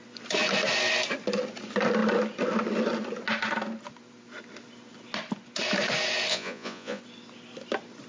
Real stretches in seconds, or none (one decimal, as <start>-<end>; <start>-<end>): 0.0-6.3; 7.0-8.1